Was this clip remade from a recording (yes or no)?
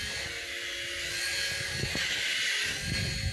no